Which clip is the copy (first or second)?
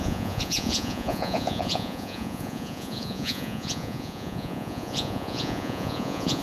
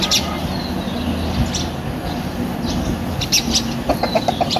first